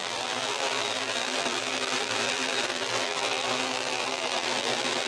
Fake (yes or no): yes